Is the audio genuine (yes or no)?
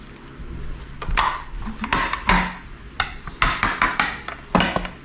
yes